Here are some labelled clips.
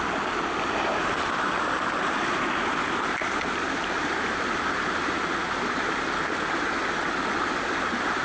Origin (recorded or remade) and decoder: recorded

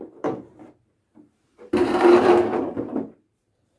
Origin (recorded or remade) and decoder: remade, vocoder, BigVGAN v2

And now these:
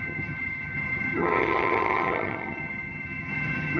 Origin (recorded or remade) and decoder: remade, vocoder, HiFi-GAN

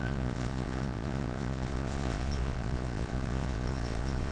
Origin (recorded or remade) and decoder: remade, vocoder, Vocos